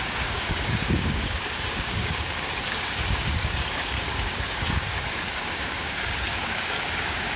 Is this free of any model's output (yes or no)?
no